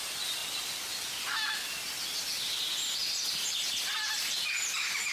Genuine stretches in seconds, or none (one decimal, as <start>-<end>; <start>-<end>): 0.0-5.1